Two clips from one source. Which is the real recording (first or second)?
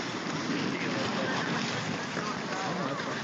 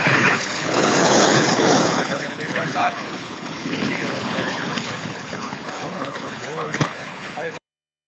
first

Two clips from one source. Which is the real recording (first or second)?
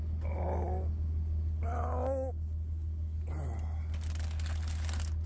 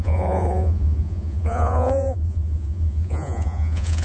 first